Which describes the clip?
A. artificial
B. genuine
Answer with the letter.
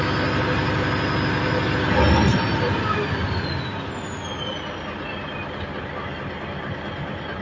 B